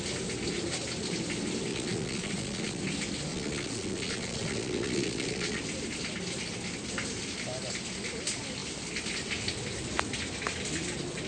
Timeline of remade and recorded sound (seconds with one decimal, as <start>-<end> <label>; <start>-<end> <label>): 0.0-1.7 recorded; 1.7-2.8 remade; 2.8-3.3 recorded; 3.3-5.6 remade; 5.6-11.3 recorded